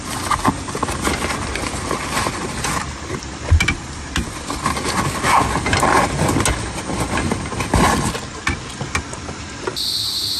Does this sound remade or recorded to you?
recorded